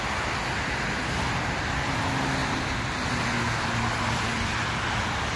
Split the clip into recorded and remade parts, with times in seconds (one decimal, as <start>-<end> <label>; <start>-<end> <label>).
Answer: 0.0-5.4 recorded